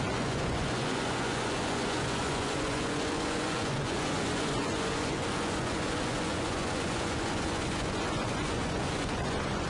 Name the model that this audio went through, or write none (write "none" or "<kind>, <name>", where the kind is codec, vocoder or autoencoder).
vocoder, Vocos